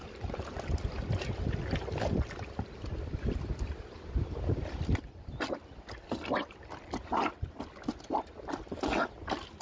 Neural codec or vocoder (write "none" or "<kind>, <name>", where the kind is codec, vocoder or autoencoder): none